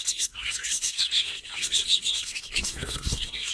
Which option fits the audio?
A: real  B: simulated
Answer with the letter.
B